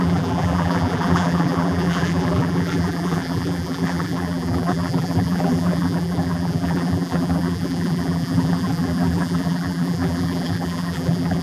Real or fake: fake